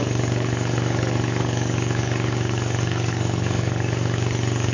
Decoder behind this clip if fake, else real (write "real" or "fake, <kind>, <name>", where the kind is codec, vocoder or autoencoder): fake, codec, DAC